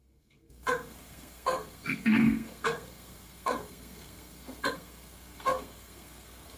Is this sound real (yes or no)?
no